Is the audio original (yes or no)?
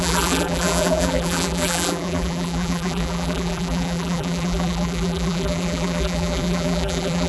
no